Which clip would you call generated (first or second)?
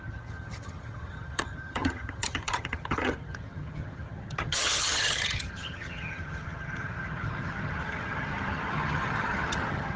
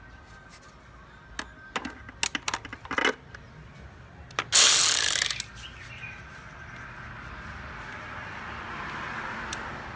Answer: first